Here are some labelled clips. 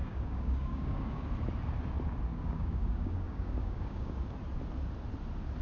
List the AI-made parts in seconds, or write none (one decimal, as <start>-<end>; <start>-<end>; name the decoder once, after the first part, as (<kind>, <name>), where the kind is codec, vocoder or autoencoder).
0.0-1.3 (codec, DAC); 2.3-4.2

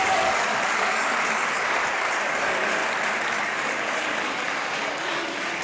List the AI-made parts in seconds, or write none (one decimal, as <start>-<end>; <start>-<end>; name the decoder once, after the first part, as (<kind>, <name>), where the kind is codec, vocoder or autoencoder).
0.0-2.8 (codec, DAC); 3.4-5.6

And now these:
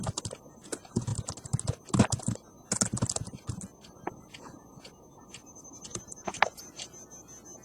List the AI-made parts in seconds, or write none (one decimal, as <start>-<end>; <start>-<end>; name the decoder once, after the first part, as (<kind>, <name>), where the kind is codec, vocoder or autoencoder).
none